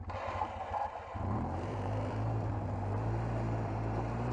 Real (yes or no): no